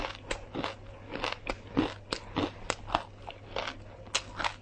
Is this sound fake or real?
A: real